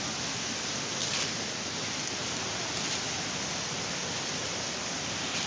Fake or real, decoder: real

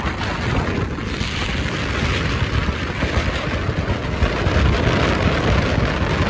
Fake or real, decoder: real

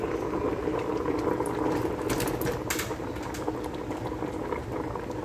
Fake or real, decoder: real